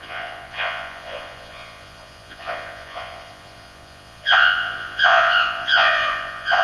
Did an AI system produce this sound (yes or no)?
yes